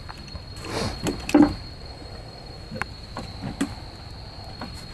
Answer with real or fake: real